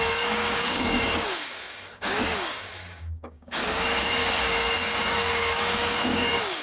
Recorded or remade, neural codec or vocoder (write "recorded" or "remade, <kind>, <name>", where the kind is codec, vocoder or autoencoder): remade, codec, DAC